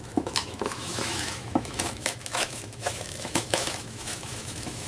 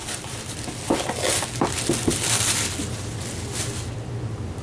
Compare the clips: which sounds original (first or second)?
second